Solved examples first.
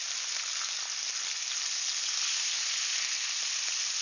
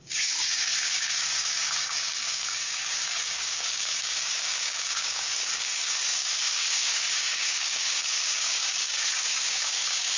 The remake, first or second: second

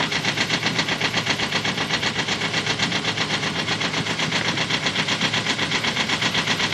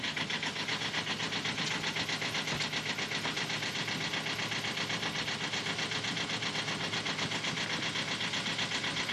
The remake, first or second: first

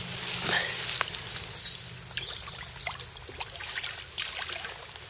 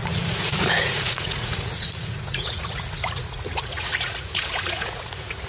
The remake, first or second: second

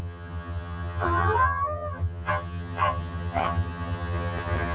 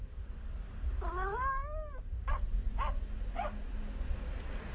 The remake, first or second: first